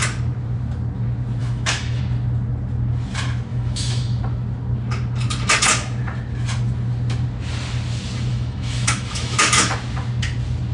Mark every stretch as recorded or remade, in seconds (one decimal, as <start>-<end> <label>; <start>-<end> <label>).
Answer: 0.0-1.4 recorded; 1.4-2.0 remade; 2.0-3.5 recorded; 3.5-4.2 remade; 4.2-8.3 recorded; 8.3-9.7 remade; 9.7-10.7 recorded